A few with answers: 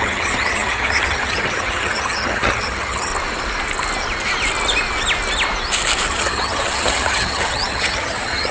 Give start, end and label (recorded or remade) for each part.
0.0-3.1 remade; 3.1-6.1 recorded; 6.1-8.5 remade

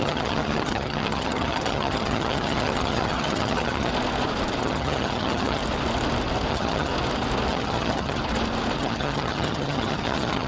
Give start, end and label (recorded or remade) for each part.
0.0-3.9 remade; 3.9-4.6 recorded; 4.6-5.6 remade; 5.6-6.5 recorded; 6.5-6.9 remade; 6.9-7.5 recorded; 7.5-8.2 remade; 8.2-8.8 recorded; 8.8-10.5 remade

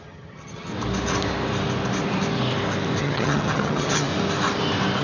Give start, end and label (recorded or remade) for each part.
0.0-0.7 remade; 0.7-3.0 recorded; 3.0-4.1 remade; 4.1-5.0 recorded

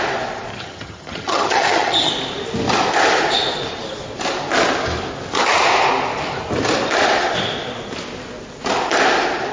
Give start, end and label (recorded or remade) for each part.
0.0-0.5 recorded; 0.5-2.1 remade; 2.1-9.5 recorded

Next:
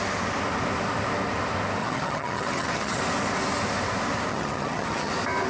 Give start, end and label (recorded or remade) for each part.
0.0-1.8 recorded; 1.8-3.0 remade; 3.0-4.3 recorded; 4.3-5.1 remade; 5.1-5.5 recorded

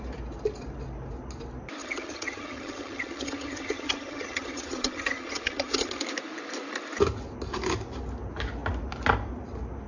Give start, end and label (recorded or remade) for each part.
0.0-1.8 recorded; 1.8-6.0 remade; 6.0-9.9 recorded